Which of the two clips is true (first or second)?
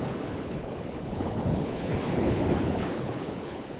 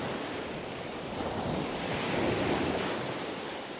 second